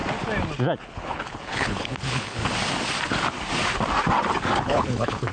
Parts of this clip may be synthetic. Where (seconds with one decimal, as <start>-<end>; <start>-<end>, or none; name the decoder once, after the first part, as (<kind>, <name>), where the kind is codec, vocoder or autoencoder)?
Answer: 0.8-2.4 (codec, HILCodec); 4.6-5.3